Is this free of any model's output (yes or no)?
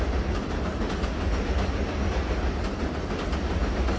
yes